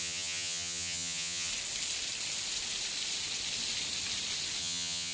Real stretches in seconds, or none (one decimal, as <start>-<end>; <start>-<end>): 1.5-4.6